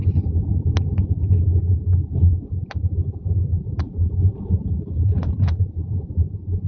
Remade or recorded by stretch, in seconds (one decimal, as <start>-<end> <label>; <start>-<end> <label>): 0.0-2.6 recorded; 2.6-6.7 remade

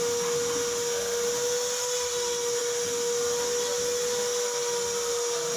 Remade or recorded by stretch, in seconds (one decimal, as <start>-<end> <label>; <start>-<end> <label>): 0.0-5.6 recorded

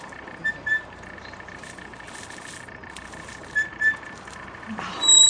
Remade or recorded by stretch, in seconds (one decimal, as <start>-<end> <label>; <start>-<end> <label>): 0.0-0.5 remade; 0.5-3.7 recorded; 3.7-5.3 remade

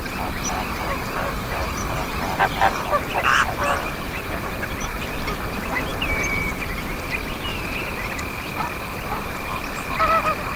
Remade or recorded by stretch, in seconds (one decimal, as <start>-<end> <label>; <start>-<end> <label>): 0.0-10.6 remade

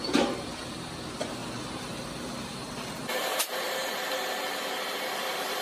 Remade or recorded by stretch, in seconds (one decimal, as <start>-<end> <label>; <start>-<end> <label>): 0.0-1.4 recorded; 1.4-4.1 remade; 4.1-5.6 recorded

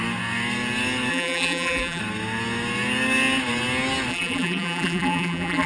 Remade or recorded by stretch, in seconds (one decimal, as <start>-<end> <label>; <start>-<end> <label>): 0.0-1.1 recorded; 1.1-2.0 remade; 2.0-4.1 recorded; 4.1-5.7 remade